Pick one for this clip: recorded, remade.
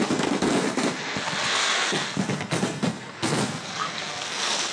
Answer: remade